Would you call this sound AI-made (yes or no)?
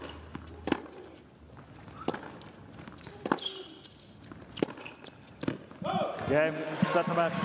no